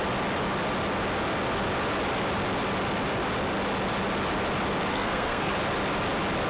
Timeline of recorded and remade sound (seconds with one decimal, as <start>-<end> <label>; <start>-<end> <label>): 0.0-4.9 recorded; 4.9-5.5 remade; 5.5-6.5 recorded